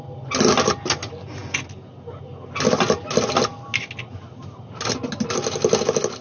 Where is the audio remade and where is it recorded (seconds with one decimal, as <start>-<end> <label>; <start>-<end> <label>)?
0.0-6.2 recorded